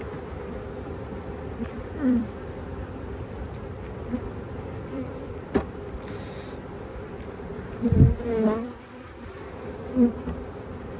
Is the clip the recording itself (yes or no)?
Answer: no